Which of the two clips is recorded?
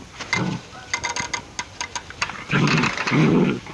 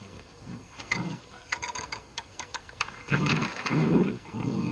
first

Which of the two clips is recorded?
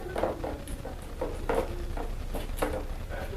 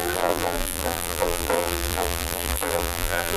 first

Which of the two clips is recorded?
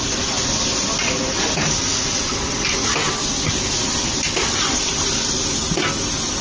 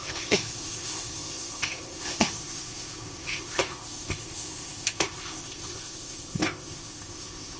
first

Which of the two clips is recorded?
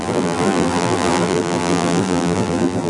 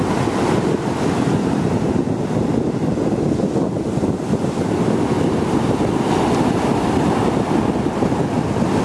second